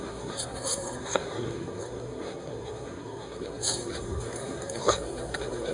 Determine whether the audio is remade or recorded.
remade